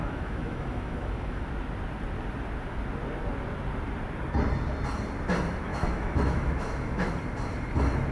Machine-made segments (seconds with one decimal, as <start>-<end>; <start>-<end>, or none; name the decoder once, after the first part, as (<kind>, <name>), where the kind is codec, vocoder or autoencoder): 0.0-1.5 (autoencoder, DAC-VAE); 5.7-7.1